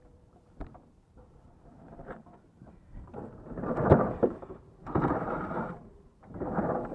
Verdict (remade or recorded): remade